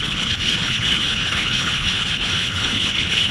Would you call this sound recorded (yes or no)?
no